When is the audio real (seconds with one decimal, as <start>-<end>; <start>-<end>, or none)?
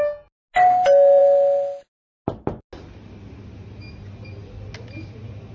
0.0-5.5